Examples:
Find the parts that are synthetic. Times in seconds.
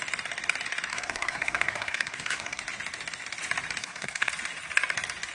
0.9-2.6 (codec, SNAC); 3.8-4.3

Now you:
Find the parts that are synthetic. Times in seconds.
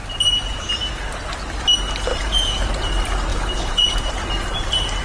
2.1-2.8 (vocoder, Vocos); 3.3-4.1